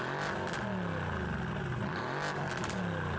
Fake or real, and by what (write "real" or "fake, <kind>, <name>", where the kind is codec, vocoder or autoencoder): real